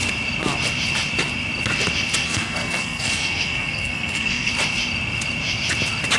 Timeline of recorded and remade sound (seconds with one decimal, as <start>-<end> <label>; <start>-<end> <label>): 0.0-2.2 recorded; 2.2-4.5 remade; 4.5-6.2 recorded